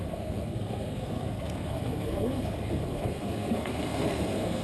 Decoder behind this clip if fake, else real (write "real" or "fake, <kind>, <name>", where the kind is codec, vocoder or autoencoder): fake, codec, SNAC